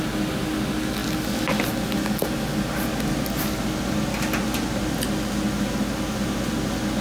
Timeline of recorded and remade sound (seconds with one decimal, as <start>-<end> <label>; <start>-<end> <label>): 0.0-7.0 recorded